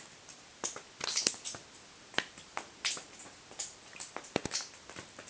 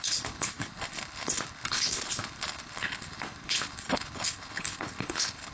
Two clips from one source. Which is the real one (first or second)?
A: first